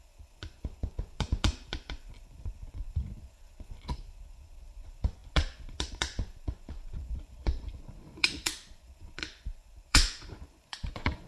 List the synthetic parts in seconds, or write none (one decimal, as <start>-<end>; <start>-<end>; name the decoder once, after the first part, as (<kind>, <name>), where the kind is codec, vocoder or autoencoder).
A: 0.0-11.3 (vocoder, Vocos)